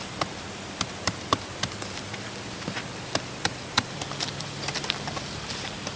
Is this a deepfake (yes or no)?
no